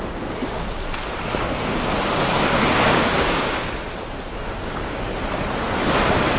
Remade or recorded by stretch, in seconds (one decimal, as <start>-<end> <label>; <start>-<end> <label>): 0.0-2.5 recorded; 2.5-3.7 remade; 3.7-4.3 recorded; 4.3-5.0 remade; 5.0-6.4 recorded